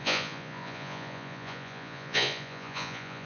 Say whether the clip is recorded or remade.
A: remade